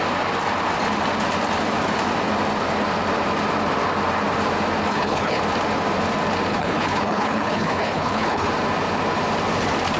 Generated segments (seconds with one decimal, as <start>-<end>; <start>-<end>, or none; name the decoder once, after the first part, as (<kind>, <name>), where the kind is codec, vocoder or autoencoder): 4.9-5.4 (codec, HILCodec); 6.5-8.5